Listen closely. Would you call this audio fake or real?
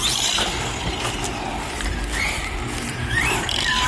fake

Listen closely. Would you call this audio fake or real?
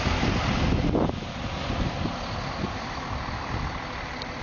real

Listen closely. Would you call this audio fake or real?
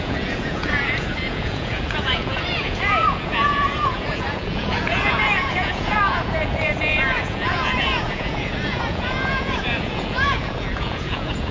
fake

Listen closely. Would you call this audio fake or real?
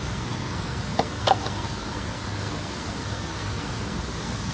fake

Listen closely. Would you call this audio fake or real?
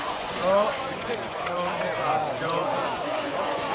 fake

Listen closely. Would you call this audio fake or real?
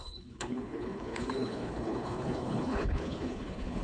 fake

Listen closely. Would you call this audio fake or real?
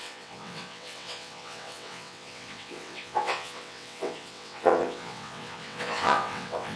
fake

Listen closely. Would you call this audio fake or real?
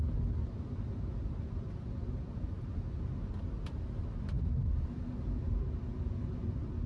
real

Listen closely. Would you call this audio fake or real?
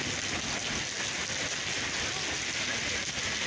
real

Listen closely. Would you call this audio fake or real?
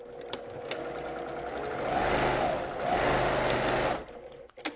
real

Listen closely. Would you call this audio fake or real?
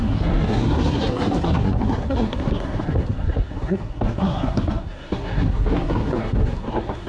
fake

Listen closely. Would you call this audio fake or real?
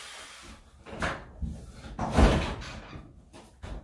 real